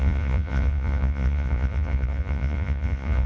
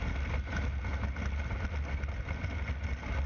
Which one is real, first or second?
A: second